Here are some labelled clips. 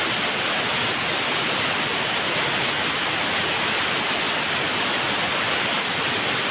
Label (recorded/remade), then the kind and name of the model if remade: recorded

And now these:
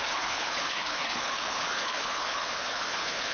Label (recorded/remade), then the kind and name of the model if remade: remade, codec, HILCodec